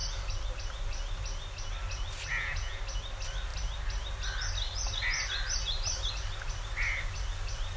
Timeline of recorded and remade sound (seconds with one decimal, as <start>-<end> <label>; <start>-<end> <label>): 0.0-2.3 recorded; 2.3-2.8 remade; 2.8-7.8 recorded

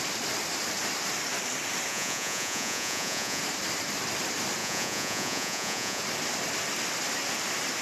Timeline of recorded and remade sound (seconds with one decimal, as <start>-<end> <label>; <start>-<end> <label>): 0.0-1.9 recorded; 1.9-3.4 remade; 3.4-4.6 recorded; 4.6-6.0 remade; 6.0-7.8 recorded

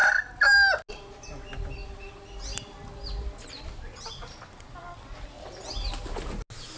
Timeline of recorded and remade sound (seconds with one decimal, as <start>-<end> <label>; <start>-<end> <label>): 0.0-6.8 recorded